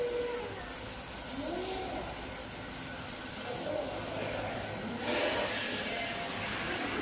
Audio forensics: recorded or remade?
recorded